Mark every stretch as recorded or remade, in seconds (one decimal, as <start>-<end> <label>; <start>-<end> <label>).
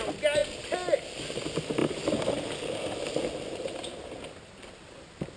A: 0.0-5.4 recorded